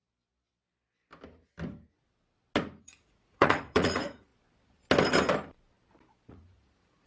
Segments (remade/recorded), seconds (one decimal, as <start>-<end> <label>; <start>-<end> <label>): 0.0-2.8 recorded; 2.8-4.3 remade; 4.3-6.3 recorded; 6.3-7.1 remade